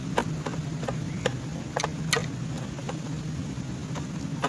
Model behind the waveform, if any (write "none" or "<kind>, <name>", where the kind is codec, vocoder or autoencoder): none